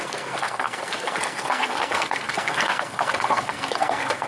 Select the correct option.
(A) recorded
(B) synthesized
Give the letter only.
B